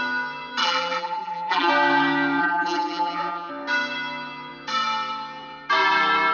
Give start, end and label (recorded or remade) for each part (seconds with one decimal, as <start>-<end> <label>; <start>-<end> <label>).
0.0-0.6 recorded; 0.6-1.7 remade; 1.7-2.4 recorded; 2.4-3.5 remade; 3.5-6.3 recorded

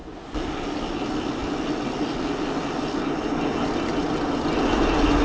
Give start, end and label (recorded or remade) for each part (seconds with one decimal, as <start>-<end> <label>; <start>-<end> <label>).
0.0-0.9 remade; 0.9-1.4 recorded; 1.4-4.0 remade; 4.0-5.2 recorded

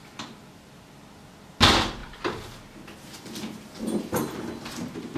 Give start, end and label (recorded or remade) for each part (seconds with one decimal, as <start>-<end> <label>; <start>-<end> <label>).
0.0-2.0 remade; 2.0-5.2 recorded